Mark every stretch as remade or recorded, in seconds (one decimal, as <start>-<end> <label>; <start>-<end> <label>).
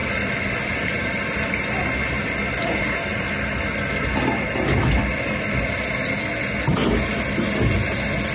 0.0-3.3 remade; 3.3-8.3 recorded